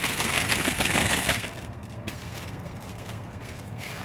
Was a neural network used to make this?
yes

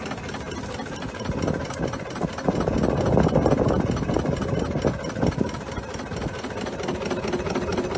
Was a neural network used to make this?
no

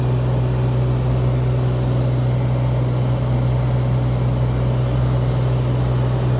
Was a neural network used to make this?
no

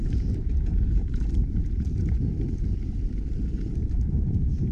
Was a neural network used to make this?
yes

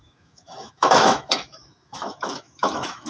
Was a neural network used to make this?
yes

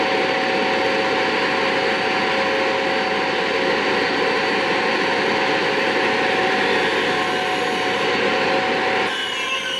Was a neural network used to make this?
no